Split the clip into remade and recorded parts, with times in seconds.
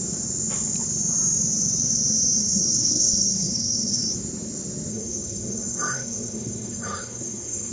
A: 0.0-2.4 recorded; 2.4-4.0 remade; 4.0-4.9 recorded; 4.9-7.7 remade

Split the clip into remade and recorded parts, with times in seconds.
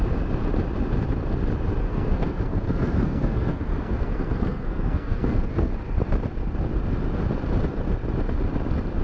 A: 0.0-1.8 recorded; 1.8-5.7 remade; 5.7-9.0 recorded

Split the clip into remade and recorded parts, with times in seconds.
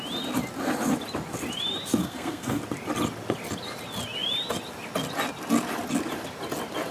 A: 0.0-2.0 recorded; 2.0-2.6 remade; 2.6-6.9 recorded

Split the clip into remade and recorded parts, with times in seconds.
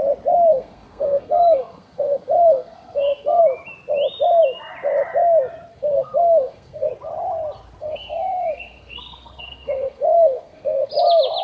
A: 0.0-0.5 recorded; 0.5-3.4 remade; 3.4-5.7 recorded; 5.7-6.9 remade; 6.9-7.8 recorded; 7.8-10.9 remade; 10.9-11.4 recorded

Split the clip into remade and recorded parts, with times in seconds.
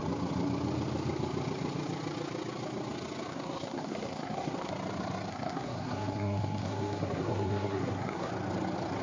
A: 0.0-3.3 recorded; 3.3-4.7 remade; 4.7-5.3 recorded; 5.3-8.3 remade; 8.3-9.0 recorded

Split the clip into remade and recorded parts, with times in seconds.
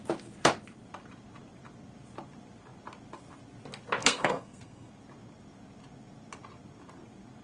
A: 0.0-4.0 recorded; 4.0-4.9 remade; 4.9-7.4 recorded